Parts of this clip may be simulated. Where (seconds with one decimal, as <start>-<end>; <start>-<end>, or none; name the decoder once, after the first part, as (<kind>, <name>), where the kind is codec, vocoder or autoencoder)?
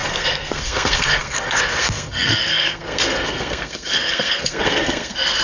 0.0-5.4 (codec, SNAC)